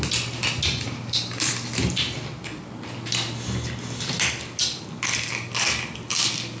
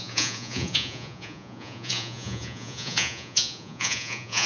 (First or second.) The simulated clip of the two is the second